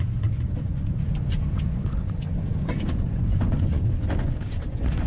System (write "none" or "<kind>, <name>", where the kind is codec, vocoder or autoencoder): vocoder, Vocos